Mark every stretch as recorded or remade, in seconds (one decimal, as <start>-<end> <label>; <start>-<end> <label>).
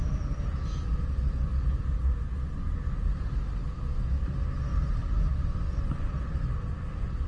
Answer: 0.0-7.3 recorded